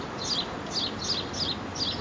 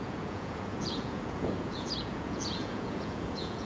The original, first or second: first